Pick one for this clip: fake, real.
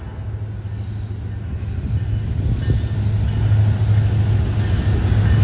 real